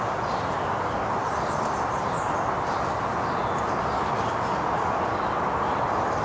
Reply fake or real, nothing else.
real